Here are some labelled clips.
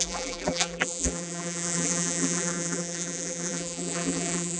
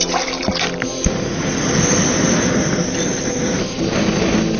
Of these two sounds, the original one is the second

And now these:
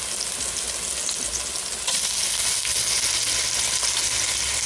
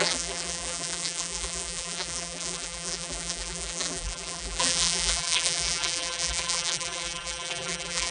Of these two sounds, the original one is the first